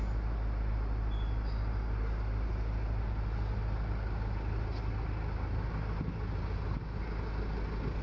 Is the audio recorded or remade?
recorded